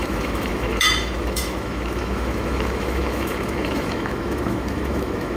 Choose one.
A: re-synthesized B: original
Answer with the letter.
A